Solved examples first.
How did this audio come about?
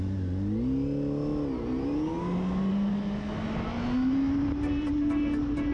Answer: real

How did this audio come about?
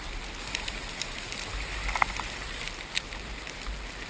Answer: real